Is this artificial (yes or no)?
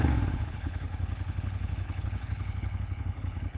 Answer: yes